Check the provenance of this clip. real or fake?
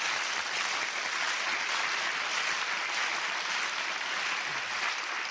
real